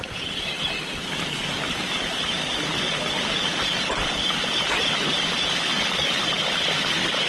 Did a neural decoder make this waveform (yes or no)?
no